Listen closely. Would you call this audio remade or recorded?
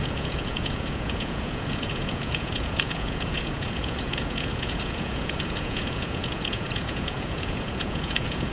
remade